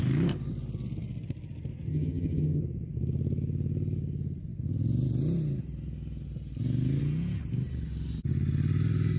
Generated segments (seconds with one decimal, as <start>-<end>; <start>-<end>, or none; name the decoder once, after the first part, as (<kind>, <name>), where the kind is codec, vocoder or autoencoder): 1.9-2.6 (vocoder, HiFi-GAN)